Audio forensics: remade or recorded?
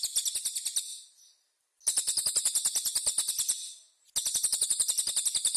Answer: recorded